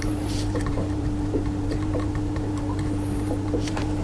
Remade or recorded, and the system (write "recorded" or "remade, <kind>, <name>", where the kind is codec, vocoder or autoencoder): remade, vocoder, BigVGAN v2